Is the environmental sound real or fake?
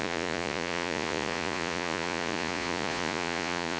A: fake